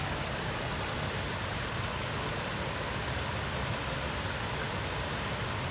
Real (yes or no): yes